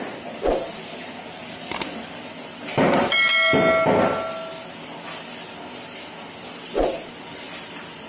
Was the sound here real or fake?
real